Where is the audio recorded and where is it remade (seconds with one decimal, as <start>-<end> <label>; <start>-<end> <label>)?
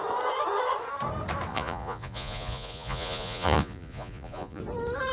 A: 0.0-1.5 recorded; 1.5-4.6 remade; 4.6-5.1 recorded